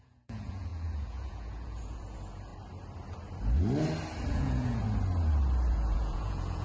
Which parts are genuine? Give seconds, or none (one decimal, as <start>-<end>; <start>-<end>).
2.5-4.3; 4.8-5.7